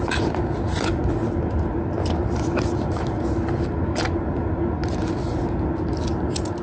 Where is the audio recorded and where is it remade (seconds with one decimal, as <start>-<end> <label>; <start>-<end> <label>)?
0.0-6.6 recorded